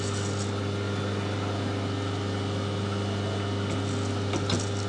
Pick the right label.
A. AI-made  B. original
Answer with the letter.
B